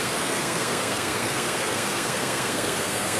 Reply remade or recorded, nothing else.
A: remade